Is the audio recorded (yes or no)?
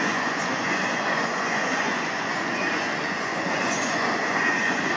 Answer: no